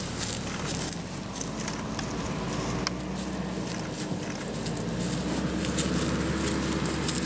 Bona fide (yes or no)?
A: yes